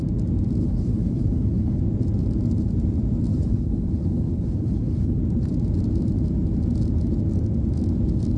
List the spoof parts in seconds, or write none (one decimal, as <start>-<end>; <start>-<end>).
0.6-1.8; 3.3-5.2